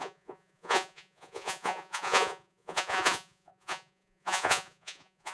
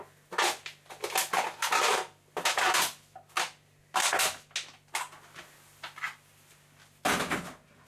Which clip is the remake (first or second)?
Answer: first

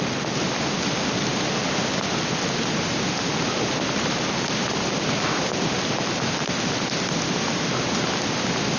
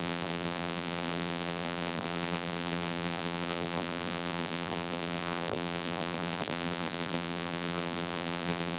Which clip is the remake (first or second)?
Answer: second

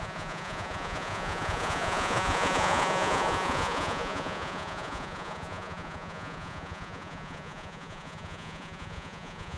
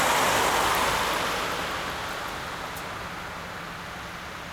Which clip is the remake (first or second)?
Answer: first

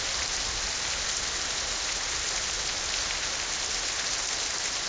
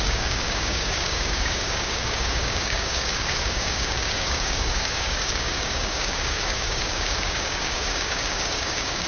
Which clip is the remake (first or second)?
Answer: second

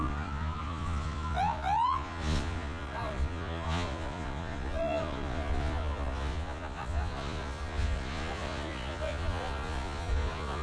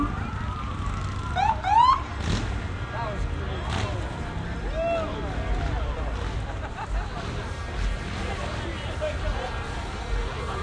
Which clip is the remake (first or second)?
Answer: first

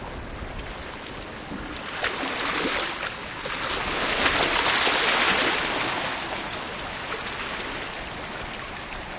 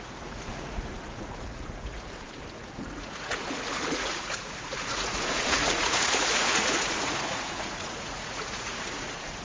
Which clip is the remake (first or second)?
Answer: second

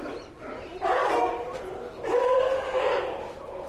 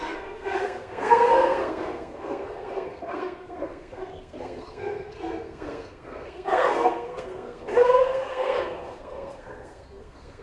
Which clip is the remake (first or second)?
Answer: second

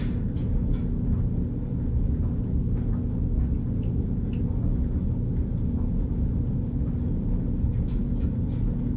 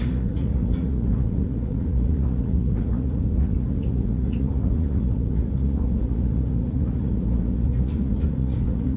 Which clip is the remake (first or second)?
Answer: second